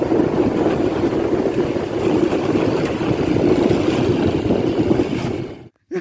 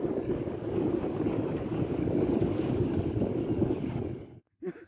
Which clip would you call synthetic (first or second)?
second